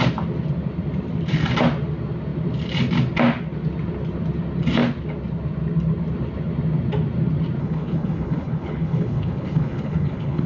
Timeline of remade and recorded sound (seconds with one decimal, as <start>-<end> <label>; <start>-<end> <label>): 0.0-7.6 recorded; 7.6-10.5 remade